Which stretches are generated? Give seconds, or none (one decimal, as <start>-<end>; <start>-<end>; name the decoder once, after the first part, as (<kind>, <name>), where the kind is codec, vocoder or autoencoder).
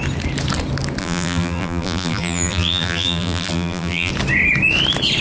1.0-4.1 (vocoder, BigVGAN v2)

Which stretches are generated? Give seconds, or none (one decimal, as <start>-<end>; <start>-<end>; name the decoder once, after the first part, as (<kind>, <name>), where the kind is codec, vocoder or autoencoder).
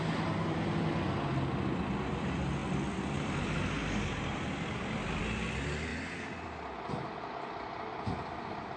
none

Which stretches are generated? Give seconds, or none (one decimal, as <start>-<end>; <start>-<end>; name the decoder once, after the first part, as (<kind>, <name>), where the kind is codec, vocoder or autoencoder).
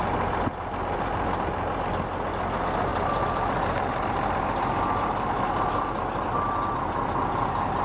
none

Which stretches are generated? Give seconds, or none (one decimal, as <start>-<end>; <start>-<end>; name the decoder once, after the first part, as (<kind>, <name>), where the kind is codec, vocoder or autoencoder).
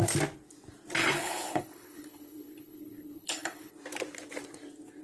1.0-3.7 (codec, HILCodec)